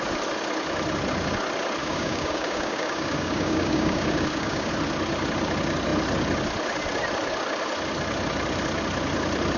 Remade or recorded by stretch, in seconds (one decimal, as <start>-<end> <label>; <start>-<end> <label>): 0.0-1.8 recorded; 1.8-4.7 remade; 4.7-9.6 recorded